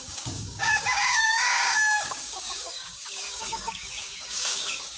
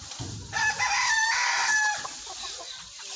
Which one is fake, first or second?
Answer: first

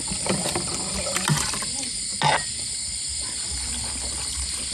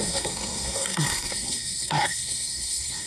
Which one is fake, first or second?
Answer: second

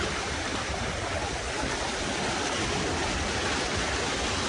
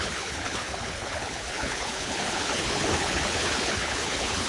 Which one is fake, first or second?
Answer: second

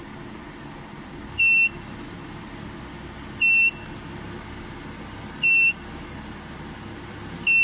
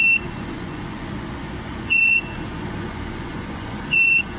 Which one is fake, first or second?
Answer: second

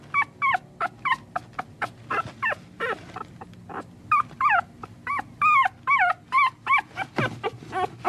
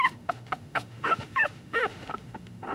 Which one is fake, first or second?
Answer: second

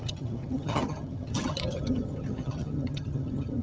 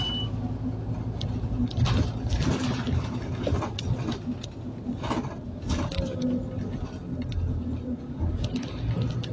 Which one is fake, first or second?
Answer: first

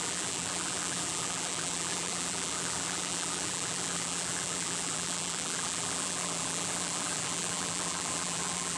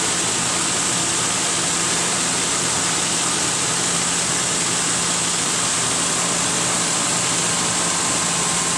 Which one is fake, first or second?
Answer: first